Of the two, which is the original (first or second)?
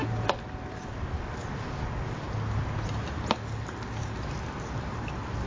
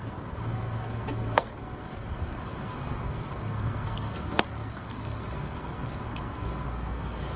first